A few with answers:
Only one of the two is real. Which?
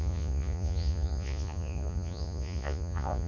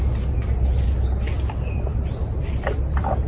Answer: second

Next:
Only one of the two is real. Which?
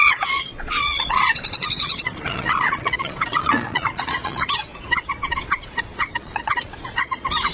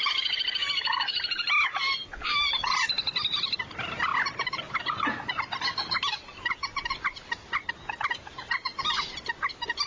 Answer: second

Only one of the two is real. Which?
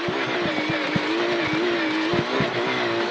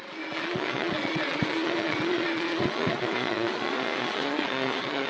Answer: first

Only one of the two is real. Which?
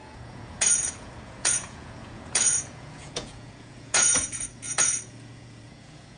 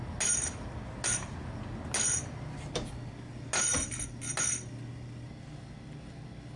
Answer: second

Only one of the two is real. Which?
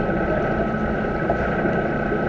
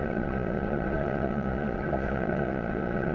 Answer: first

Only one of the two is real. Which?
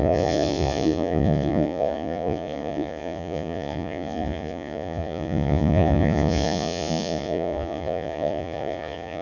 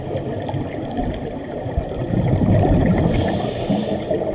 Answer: second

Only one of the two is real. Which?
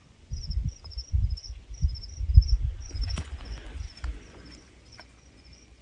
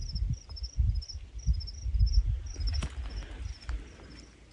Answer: second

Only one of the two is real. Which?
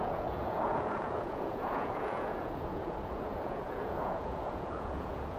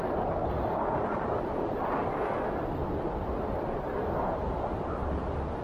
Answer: second